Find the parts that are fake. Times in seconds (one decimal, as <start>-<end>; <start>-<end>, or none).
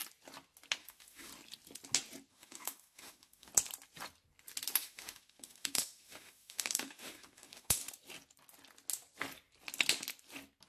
0.8-1.3; 2.3-3.5; 4.8-7.8